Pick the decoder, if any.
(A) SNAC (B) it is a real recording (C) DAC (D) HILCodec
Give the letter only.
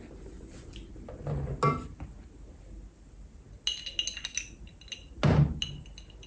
B